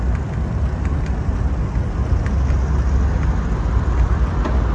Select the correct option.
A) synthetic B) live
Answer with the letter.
B